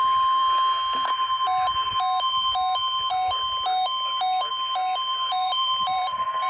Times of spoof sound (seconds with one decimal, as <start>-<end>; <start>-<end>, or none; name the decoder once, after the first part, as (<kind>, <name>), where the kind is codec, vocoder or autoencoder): 5.1-6.5 (vocoder, BigVGAN v2)